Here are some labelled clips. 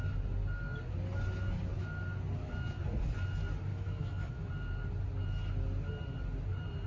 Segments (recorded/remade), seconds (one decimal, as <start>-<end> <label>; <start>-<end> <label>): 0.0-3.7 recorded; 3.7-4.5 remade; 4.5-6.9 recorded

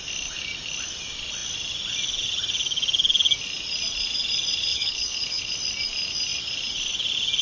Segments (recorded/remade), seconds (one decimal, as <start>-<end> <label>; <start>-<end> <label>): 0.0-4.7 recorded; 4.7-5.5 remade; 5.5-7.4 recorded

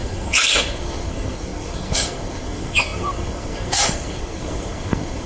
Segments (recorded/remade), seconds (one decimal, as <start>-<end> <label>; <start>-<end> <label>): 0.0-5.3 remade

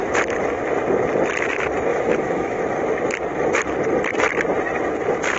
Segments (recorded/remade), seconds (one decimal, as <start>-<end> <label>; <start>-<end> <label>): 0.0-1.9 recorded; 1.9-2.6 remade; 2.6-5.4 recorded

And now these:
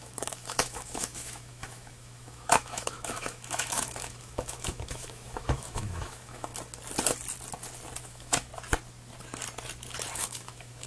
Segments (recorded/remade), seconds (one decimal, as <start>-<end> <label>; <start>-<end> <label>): 0.0-6.5 remade; 6.5-8.0 recorded; 8.0-8.5 remade; 8.5-10.2 recorded; 10.2-10.9 remade

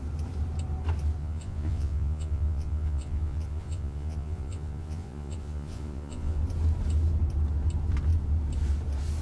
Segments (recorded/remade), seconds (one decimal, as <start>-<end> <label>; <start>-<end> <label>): 0.0-1.2 recorded; 1.2-6.4 remade; 6.4-9.2 recorded

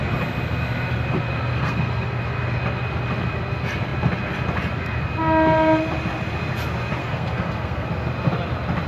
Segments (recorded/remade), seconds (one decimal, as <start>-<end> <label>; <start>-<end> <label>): 0.0-1.5 recorded; 1.5-2.2 remade; 2.2-7.0 recorded; 7.0-7.9 remade; 7.9-8.9 recorded

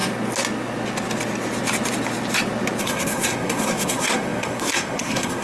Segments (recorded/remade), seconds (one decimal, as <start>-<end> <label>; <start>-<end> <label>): 0.0-2.8 recorded; 2.8-5.4 remade